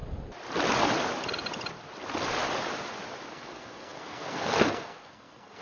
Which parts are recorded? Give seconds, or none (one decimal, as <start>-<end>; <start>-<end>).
0.0-3.3